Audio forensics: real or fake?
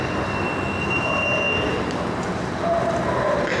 real